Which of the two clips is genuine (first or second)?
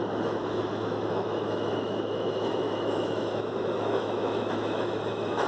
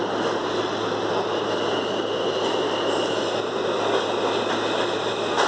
second